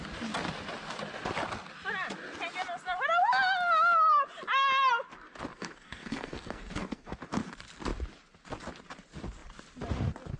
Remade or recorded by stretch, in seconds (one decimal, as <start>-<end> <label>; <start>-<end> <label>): 0.0-5.5 recorded; 5.5-7.1 remade; 7.1-10.4 recorded